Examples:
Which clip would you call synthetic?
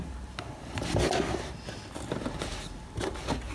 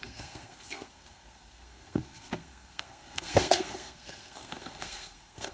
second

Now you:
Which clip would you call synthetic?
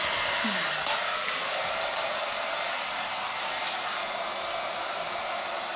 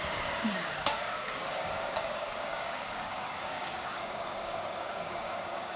second